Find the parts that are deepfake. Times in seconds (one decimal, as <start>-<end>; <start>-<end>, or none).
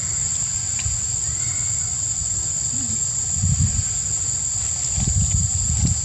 none